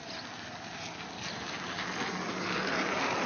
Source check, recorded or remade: recorded